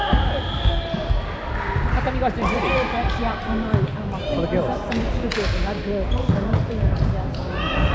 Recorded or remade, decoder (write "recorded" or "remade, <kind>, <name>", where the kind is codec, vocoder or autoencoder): recorded